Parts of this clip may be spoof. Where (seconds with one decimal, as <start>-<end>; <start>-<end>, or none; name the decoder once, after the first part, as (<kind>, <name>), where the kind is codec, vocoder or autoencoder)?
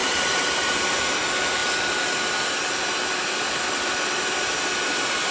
0.0-0.8 (vocoder, BigVGAN v2)